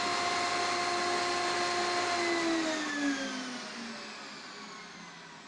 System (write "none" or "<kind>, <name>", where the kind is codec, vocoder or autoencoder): none